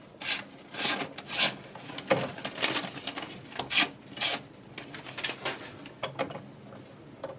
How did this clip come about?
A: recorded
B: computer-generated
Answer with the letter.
A